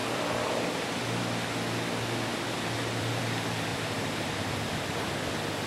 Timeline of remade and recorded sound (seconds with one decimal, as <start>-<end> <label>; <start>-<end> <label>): 0.0-1.2 remade; 1.2-2.3 recorded; 2.3-3.2 remade; 3.2-3.7 recorded; 3.7-5.1 remade; 5.1-5.7 recorded